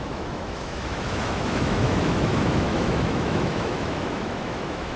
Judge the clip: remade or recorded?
remade